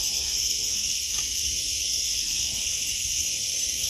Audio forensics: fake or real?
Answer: fake